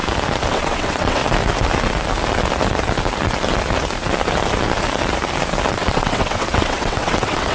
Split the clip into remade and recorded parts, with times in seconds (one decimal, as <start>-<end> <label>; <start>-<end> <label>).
0.0-0.5 recorded; 0.5-1.2 remade; 1.2-5.7 recorded; 5.7-7.5 remade